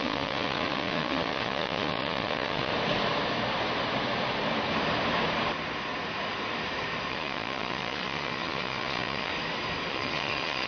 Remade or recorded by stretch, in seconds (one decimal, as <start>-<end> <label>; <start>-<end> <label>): 0.0-2.7 remade; 2.7-7.1 recorded; 7.1-9.3 remade; 9.3-9.9 recorded; 9.9-10.7 remade